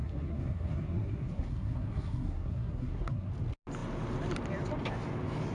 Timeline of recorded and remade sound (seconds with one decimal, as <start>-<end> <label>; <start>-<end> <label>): 0.0-3.3 remade; 3.3-5.5 recorded